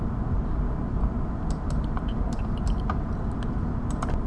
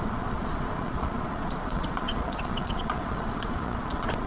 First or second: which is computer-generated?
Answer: second